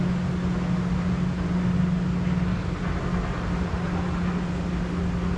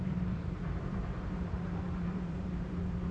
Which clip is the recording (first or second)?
first